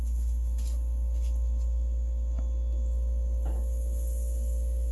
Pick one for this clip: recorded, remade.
recorded